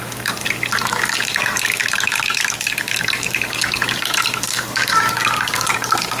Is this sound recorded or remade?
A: remade